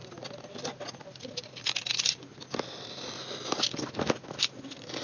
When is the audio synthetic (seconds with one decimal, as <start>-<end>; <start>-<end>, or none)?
none